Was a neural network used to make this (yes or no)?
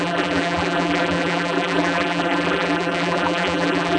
yes